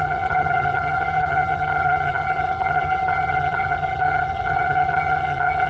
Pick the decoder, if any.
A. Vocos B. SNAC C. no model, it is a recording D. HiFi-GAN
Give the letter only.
D